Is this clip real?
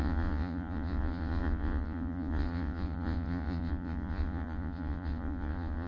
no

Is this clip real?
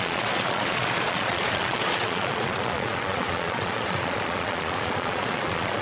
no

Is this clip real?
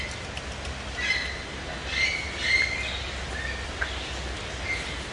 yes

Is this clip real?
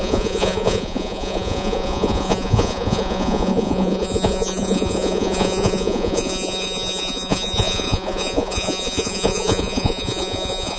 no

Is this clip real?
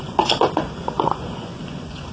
no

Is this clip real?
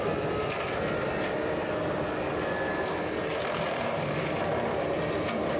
yes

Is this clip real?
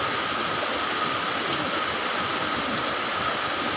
yes